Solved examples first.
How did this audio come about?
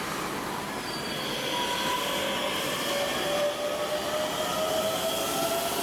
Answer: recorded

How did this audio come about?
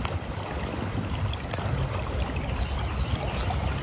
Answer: recorded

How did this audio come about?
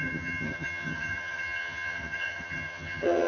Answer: remade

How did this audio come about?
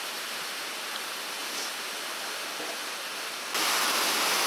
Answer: recorded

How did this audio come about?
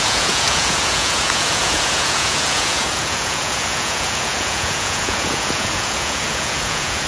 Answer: remade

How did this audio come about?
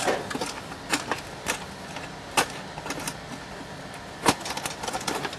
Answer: recorded